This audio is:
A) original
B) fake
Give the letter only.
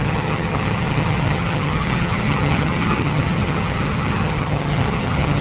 B